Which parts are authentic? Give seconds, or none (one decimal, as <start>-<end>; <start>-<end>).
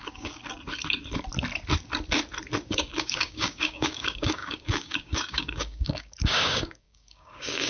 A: 0.4-2.7